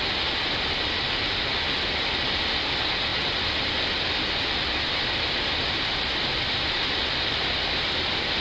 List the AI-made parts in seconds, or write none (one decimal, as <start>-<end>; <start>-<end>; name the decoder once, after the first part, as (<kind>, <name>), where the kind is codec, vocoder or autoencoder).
none